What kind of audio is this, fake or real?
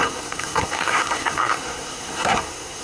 fake